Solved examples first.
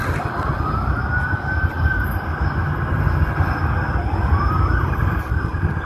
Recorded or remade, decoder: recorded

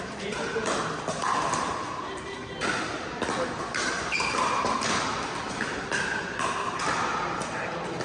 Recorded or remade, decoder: recorded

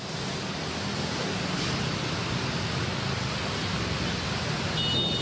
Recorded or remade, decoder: recorded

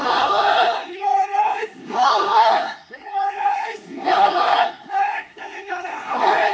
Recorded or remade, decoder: remade, codec, SNAC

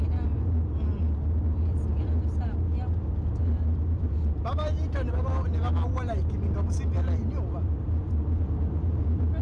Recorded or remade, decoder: recorded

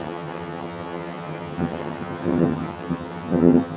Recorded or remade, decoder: remade, vocoder, HiFi-GAN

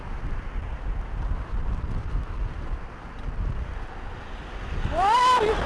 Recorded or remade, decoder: recorded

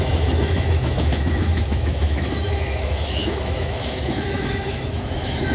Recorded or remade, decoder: remade, autoencoder, DAC-VAE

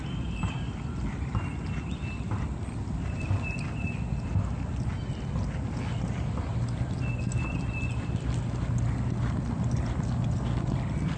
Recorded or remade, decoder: recorded